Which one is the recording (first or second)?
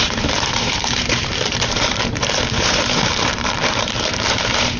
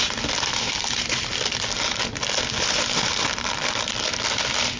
second